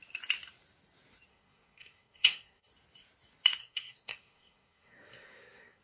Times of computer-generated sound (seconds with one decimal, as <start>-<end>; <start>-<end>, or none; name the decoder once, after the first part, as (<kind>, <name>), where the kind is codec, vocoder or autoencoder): 1.3-2.7 (codec, SNAC); 3.6-5.8